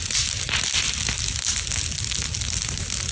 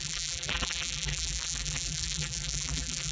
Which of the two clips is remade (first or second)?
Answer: second